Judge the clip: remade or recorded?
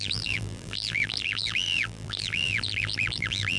remade